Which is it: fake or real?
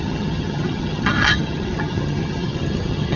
fake